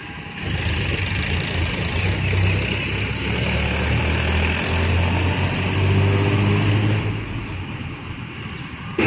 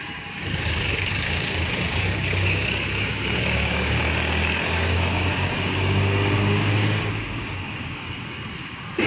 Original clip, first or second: first